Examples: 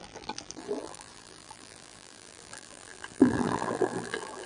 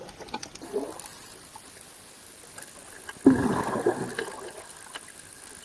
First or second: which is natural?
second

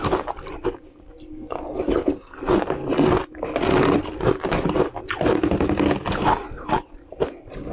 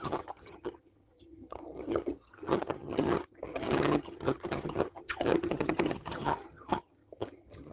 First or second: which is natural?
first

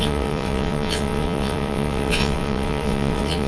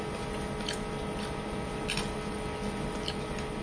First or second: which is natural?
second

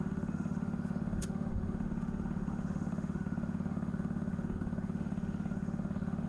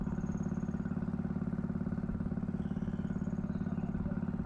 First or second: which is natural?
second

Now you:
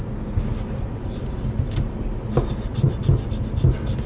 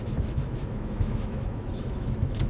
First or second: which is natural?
first